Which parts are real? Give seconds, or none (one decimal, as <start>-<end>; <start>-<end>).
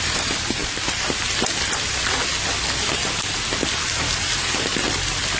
0.0-5.4